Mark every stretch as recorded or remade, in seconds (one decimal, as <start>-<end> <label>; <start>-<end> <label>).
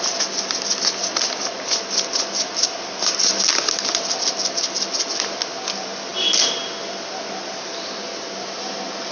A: 0.0-9.1 recorded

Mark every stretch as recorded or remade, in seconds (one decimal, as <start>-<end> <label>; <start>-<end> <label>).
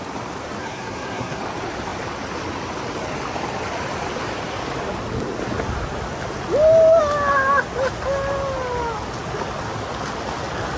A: 0.0-0.6 recorded; 0.6-1.4 remade; 1.4-10.8 recorded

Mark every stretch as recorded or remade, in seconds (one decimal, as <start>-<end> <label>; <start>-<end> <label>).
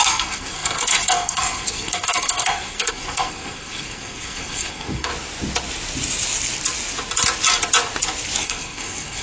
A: 0.0-5.1 remade; 5.1-8.4 recorded; 8.4-9.2 remade